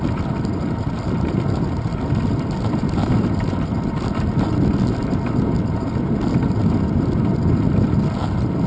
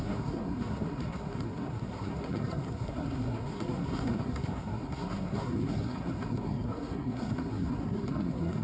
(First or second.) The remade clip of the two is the second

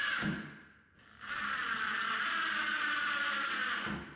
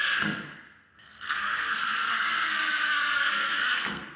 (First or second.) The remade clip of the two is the second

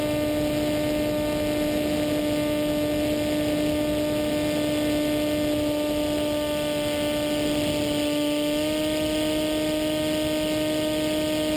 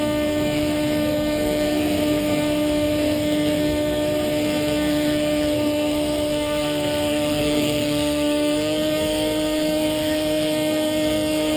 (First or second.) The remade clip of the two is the second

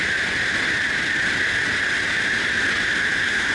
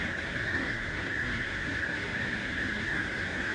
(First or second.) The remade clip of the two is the second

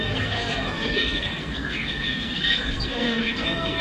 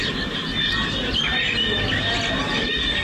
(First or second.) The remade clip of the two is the first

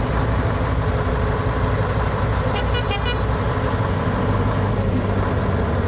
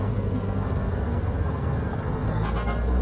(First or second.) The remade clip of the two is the second